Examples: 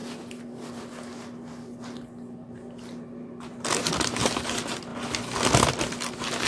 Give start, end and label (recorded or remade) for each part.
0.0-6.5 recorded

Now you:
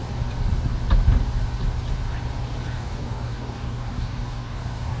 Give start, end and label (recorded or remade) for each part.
0.0-2.7 recorded; 2.7-5.0 remade

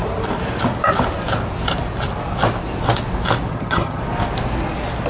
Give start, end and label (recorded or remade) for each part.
0.0-3.5 recorded; 3.5-4.0 remade; 4.0-5.1 recorded